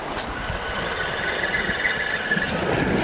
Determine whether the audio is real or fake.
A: real